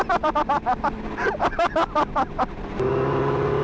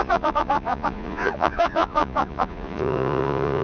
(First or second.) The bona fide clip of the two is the first